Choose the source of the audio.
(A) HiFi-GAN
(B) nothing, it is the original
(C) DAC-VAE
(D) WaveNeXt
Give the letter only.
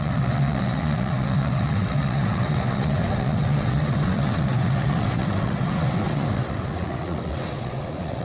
D